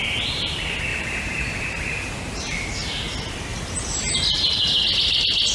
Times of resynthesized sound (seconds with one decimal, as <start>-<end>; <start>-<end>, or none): 0.9-2.7; 3.5-4.3